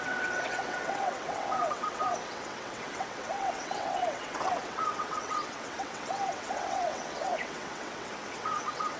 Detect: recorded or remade remade